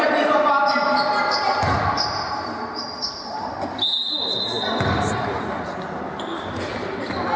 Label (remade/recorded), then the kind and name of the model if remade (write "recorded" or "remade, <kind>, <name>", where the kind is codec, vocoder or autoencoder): recorded